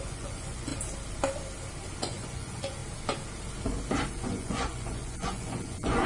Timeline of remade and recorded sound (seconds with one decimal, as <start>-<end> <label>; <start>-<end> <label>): 0.0-0.7 remade; 0.7-2.0 recorded; 2.0-2.8 remade; 2.8-4.1 recorded; 4.1-6.1 remade